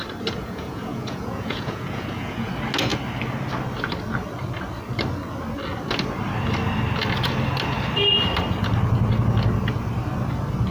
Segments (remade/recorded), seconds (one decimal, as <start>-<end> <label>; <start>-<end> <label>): 0.0-0.4 recorded; 0.4-2.5 remade; 2.5-10.7 recorded

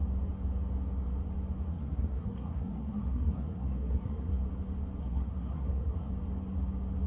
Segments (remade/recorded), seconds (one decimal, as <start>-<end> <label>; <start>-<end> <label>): 0.0-1.7 recorded; 1.7-4.3 remade; 4.3-5.0 recorded; 5.0-6.1 remade; 6.1-7.1 recorded

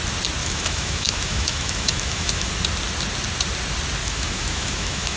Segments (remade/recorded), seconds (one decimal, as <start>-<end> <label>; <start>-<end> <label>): 0.0-0.4 recorded; 0.4-2.5 remade; 2.5-4.0 recorded; 4.0-5.2 remade

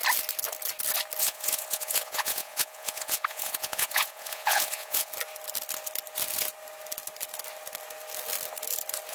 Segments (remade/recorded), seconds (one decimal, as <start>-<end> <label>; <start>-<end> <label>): 0.0-1.2 recorded; 1.2-5.1 remade; 5.1-9.1 recorded

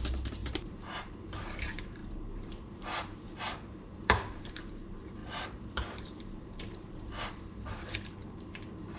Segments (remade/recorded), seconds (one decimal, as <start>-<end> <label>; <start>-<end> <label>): 0.0-9.0 remade

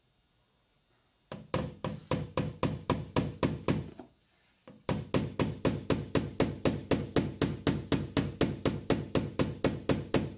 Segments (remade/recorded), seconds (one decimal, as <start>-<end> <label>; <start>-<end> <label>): 0.0-10.4 recorded

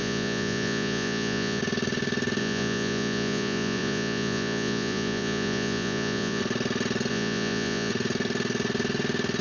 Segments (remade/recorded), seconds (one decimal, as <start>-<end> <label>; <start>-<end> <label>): 0.0-1.6 remade; 1.6-2.4 recorded; 2.4-6.4 remade; 6.4-7.1 recorded; 7.1-7.9 remade; 7.9-9.4 recorded